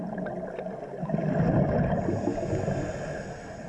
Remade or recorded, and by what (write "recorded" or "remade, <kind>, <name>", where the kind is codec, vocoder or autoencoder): recorded